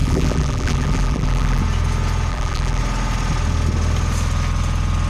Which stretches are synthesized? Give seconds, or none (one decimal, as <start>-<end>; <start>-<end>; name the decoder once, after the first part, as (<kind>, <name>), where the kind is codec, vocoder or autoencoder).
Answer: 0.0-1.6 (vocoder, BigVGAN v2); 2.3-2.8